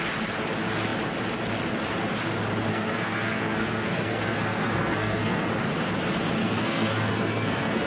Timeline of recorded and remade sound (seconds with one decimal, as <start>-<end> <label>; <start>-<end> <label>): 0.0-2.7 recorded; 2.7-5.5 remade; 5.5-6.4 recorded; 6.4-7.9 remade